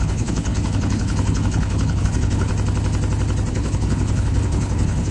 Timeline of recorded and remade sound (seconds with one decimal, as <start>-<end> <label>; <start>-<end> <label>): 0.0-2.5 remade; 2.5-3.5 recorded; 3.5-5.1 remade